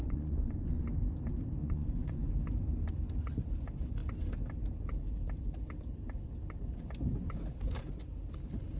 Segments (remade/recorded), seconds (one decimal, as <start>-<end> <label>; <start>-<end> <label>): 0.0-0.8 remade; 0.8-1.6 recorded; 1.6-2.3 remade; 2.3-8.8 recorded